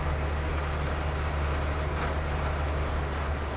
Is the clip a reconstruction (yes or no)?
no